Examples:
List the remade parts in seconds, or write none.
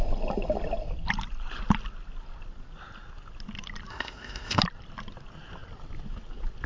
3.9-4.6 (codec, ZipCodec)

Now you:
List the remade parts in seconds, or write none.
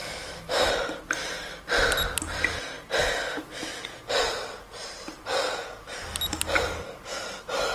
0.0-0.7 (autoencoder, DAC-VAE); 3.0-3.8